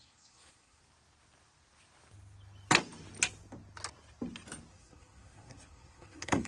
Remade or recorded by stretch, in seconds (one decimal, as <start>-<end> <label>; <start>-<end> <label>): 0.0-0.8 remade; 0.8-4.7 recorded; 4.7-6.5 remade